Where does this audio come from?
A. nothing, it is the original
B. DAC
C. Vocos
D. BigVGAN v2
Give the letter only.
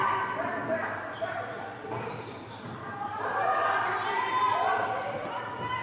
A